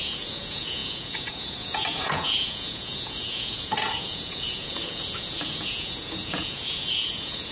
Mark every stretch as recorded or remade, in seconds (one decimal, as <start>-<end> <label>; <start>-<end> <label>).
0.0-7.5 remade